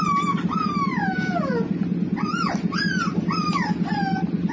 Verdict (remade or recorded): recorded